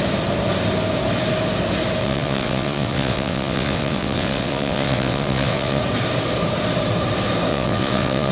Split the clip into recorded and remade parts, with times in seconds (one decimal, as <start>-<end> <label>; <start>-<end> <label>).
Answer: 0.0-2.0 recorded; 2.0-5.8 remade; 5.8-7.5 recorded; 7.5-8.3 remade